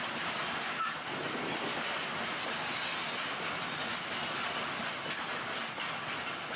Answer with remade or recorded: recorded